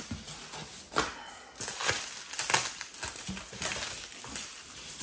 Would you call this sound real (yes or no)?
yes